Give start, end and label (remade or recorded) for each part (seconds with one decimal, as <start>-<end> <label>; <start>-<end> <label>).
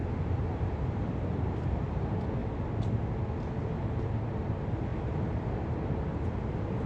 0.0-6.9 recorded